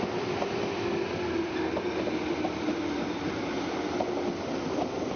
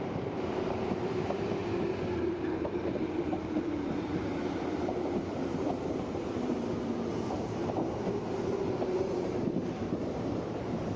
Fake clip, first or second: second